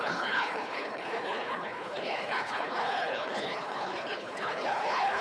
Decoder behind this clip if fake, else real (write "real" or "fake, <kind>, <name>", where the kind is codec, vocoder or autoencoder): fake, codec, HILCodec